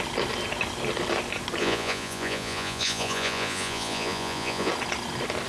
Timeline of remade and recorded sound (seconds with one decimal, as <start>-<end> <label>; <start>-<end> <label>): 0.0-1.6 recorded; 1.6-4.7 remade; 4.7-5.5 recorded